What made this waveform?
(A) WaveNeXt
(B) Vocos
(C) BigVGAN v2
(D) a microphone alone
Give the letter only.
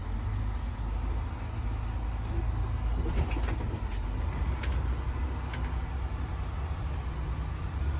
D